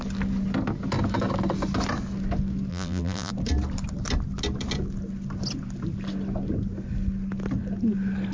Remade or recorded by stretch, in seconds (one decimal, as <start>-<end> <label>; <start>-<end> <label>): 0.0-2.7 recorded; 2.7-3.3 remade; 3.3-8.3 recorded